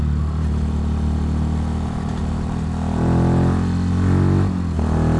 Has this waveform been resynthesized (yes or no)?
no